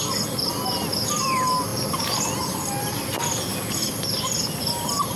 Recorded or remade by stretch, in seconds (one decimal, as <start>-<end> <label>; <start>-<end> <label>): 0.0-5.2 recorded